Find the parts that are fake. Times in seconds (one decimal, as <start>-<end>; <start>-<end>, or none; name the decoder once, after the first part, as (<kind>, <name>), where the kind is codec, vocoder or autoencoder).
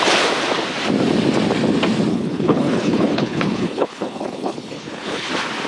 2.1-5.3 (codec, HILCodec)